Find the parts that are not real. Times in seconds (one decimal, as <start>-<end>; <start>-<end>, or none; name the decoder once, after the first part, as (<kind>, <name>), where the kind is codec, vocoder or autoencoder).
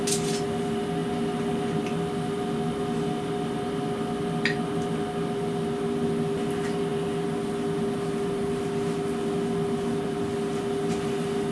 none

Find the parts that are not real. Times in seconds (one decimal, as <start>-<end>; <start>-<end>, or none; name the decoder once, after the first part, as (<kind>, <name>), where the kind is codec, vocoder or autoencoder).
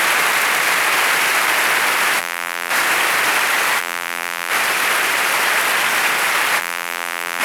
2.2-2.7 (vocoder, BigVGAN v2); 3.8-4.5; 6.6-7.4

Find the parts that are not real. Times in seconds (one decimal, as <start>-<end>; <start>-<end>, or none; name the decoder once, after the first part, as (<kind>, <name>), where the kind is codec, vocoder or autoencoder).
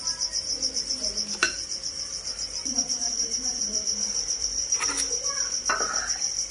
1.4-5.1 (vocoder, BigVGAN v2)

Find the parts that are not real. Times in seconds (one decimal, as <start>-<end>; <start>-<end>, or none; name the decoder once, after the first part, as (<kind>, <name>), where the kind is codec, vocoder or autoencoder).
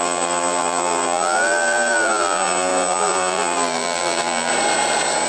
0.0-4.5 (vocoder, BigVGAN v2)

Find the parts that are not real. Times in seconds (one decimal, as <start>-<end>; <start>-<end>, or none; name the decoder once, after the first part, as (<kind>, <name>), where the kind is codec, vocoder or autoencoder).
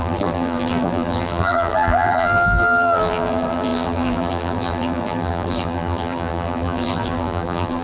0.0-7.8 (vocoder, BigVGAN v2)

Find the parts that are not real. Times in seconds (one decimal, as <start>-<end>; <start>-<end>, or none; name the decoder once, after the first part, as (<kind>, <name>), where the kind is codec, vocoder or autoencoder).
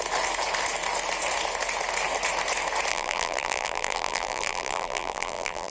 2.9-5.7 (vocoder, BigVGAN v2)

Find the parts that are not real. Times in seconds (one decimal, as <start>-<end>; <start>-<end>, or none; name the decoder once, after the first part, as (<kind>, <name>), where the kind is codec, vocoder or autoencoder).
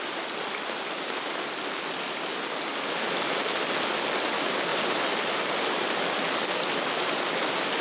4.7-6.0 (vocoder, BigVGAN v2)